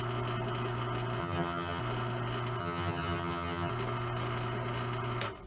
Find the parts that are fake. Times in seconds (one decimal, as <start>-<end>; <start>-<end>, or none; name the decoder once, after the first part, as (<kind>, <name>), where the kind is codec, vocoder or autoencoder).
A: 1.2-1.8 (vocoder, HiFi-GAN); 2.6-3.7